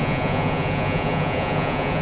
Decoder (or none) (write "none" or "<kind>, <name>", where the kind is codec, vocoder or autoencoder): vocoder, Vocos